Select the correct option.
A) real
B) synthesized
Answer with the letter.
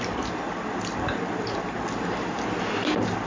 B